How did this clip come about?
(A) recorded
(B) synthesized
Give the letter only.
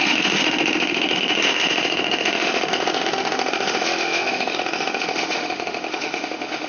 B